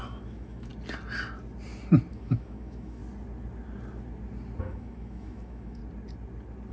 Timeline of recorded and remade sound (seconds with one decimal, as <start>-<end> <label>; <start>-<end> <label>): 0.0-0.7 remade; 0.7-2.1 recorded; 2.1-3.0 remade; 3.0-4.6 recorded; 4.6-5.8 remade; 5.8-6.7 recorded